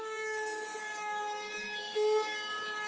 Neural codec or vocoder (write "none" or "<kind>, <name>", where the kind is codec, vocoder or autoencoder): codec, DAC